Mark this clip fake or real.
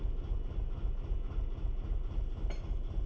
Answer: real